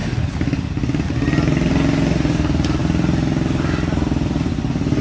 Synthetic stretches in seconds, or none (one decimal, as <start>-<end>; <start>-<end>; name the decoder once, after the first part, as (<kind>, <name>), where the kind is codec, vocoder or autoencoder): none